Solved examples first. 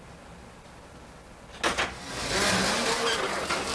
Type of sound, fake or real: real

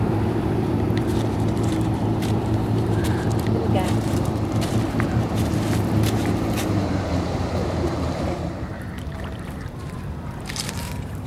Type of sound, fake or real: fake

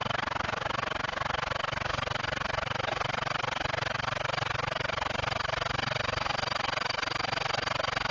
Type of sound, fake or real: real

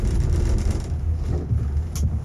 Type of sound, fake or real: real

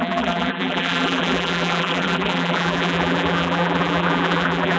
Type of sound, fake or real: fake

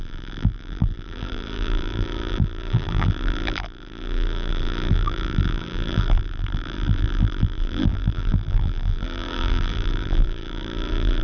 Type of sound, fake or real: fake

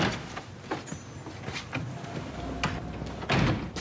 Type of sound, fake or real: real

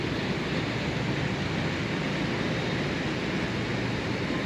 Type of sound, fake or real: real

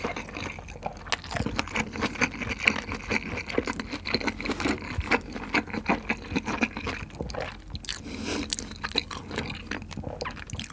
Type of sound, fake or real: real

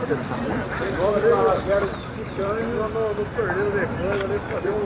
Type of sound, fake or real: real